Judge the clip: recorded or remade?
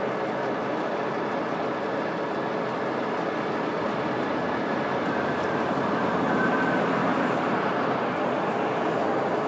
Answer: recorded